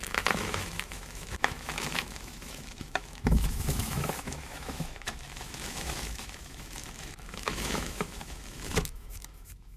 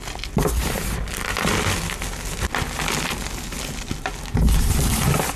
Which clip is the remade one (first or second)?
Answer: first